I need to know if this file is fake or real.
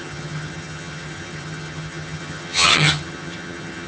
fake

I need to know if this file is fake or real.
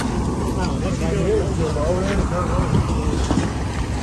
real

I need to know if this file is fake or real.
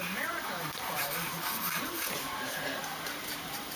fake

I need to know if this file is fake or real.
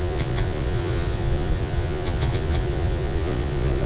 fake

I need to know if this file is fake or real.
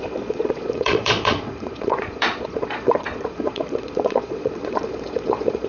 fake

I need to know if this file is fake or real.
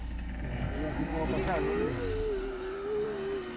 real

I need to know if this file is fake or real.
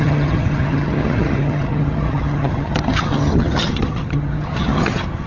fake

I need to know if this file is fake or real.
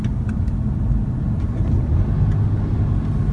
real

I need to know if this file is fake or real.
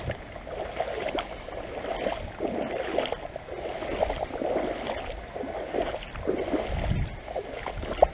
real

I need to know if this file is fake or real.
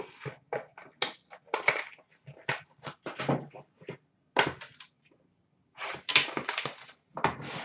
real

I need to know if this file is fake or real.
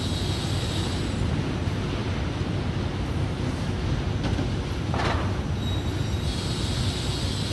real